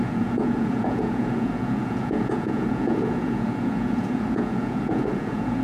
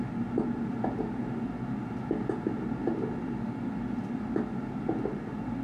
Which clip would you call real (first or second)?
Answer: second